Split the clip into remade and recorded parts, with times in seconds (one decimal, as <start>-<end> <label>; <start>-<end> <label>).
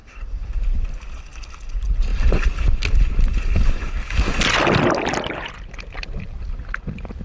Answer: 0.0-7.2 recorded